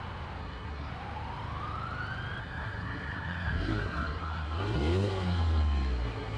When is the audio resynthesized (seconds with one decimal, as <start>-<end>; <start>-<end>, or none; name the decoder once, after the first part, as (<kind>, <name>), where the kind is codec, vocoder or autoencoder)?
0.4-0.9 (codec, SNAC); 2.4-6.4

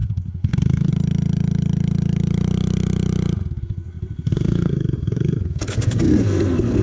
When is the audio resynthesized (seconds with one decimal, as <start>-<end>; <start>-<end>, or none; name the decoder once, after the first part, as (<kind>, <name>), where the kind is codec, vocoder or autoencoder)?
0.0-0.9 (codec, SNAC); 3.6-6.8

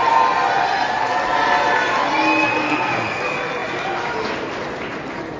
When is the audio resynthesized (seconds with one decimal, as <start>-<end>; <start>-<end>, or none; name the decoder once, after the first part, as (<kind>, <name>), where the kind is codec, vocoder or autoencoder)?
2.6-3.2 (codec, SNAC)